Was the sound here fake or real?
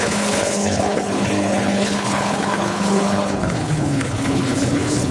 fake